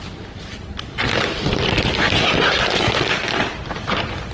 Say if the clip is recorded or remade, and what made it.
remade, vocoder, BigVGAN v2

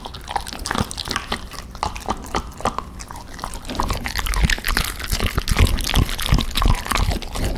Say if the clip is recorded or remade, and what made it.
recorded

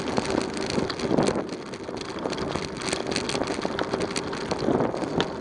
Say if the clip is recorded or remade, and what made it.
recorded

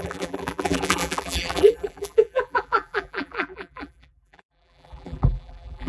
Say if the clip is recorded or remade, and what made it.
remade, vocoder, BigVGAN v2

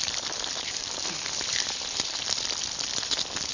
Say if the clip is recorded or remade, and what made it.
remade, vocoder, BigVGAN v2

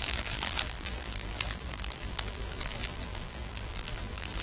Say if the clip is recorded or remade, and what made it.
remade, vocoder, BigVGAN v2